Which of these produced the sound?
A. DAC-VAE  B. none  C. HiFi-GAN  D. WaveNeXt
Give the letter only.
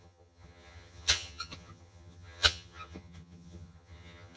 C